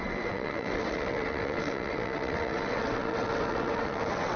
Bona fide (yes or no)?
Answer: no